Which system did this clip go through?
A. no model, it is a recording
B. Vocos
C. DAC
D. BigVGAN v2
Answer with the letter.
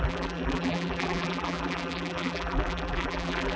D